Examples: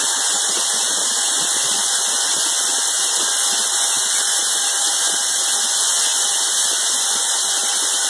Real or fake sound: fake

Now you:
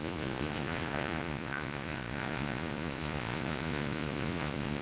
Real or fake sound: fake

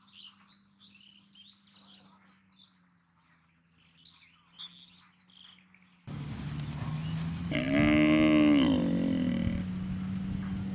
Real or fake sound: real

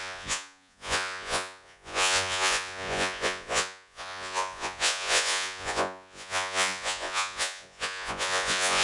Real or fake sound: fake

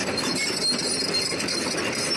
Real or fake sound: real